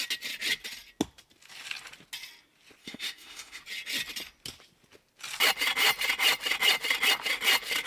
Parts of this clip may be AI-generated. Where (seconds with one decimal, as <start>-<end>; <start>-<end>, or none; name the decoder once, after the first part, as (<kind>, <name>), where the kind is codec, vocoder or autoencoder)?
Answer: 2.8-3.6 (autoencoder, DAC-VAE)

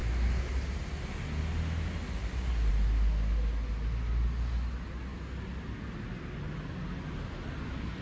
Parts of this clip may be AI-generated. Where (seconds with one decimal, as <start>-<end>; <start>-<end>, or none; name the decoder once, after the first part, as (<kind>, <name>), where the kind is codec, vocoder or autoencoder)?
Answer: none

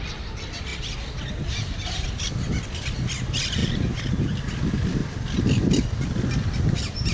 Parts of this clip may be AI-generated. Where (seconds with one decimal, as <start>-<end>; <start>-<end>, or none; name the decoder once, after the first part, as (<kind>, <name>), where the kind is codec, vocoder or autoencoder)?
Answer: none

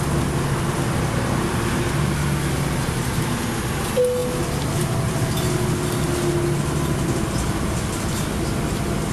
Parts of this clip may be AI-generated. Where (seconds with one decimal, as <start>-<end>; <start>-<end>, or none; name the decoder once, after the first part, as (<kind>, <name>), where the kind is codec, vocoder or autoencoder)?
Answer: none

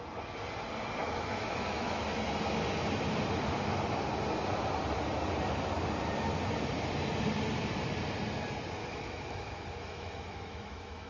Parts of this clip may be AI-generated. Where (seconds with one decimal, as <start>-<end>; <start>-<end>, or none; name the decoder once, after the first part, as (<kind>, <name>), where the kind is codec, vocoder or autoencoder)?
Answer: 1.0-2.0 (autoencoder, DAC-VAE); 8.8-11.1